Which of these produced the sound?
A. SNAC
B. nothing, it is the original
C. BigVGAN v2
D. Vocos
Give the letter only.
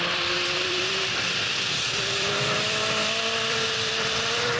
C